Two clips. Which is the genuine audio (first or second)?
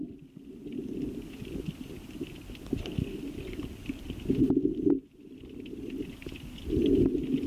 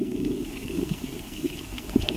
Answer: first